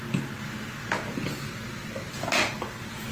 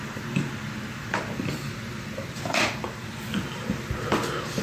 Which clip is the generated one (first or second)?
second